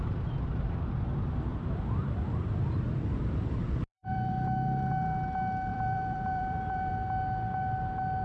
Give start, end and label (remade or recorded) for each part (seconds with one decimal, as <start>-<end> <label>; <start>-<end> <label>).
0.0-1.5 recorded; 1.5-4.3 remade; 4.3-5.7 recorded; 5.7-6.9 remade; 6.9-8.2 recorded